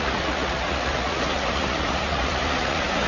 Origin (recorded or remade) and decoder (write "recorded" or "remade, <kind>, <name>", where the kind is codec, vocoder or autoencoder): remade, vocoder, Vocos